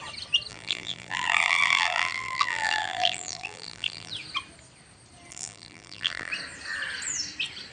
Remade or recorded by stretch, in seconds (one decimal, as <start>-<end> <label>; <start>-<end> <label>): 0.0-0.5 recorded; 0.5-4.1 remade; 4.1-5.3 recorded; 5.3-6.3 remade; 6.3-7.7 recorded